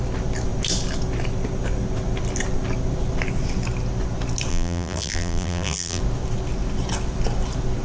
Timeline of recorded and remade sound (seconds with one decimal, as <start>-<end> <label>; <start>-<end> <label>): 0.0-4.5 recorded; 4.5-6.0 remade; 6.0-7.8 recorded